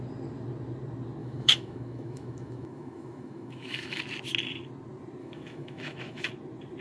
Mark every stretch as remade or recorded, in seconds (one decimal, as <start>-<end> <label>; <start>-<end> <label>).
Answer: 0.0-1.2 recorded; 1.2-4.0 remade; 4.0-5.2 recorded; 5.2-6.3 remade; 6.3-6.8 recorded